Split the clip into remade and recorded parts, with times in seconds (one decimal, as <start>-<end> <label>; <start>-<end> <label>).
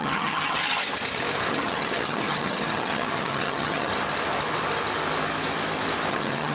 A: 0.0-0.6 remade; 0.6-1.5 recorded; 1.5-3.9 remade; 3.9-6.1 recorded; 6.1-6.5 remade